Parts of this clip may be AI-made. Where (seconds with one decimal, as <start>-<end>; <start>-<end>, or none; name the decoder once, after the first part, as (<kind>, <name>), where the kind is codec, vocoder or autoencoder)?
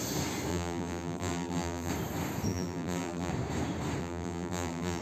0.5-1.9 (vocoder, BigVGAN v2); 2.5-3.3; 4.0-5.0